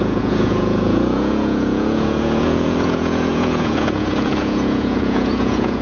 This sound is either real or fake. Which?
fake